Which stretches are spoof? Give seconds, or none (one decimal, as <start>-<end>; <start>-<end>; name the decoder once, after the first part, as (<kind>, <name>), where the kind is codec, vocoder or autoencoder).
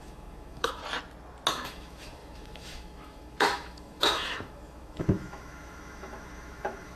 0.0-0.8 (autoencoder, DAC-VAE); 1.5-7.0